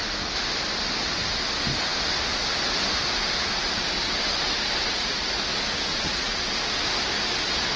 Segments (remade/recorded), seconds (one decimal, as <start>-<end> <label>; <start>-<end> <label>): 0.0-4.9 recorded; 4.9-5.4 remade; 5.4-5.9 recorded; 5.9-6.4 remade; 6.4-7.8 recorded